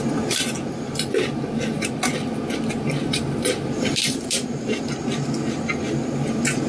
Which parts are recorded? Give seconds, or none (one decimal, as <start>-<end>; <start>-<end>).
0.0-3.0; 4.8-6.7